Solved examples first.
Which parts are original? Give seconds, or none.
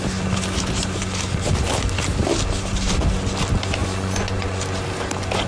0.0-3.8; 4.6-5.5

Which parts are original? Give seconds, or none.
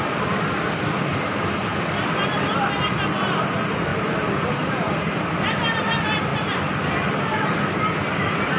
0.0-1.7; 2.7-3.9; 5.0-6.3; 7.1-8.6